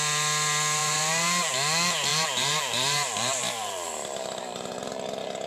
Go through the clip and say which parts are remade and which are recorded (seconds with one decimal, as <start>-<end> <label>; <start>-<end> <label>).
0.0-0.8 recorded; 0.8-1.5 remade; 1.5-2.1 recorded; 2.1-5.5 remade